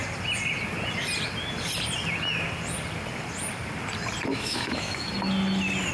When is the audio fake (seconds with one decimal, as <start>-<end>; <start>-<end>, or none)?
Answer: 4.3-5.1

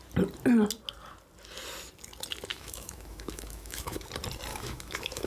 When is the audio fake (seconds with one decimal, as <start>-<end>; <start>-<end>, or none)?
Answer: 2.5-4.1; 4.5-5.3

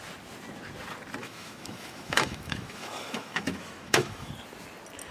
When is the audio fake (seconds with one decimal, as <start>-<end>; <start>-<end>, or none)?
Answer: 1.2-4.3

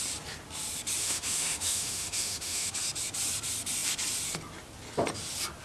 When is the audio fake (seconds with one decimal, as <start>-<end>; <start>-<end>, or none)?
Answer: 1.0-2.7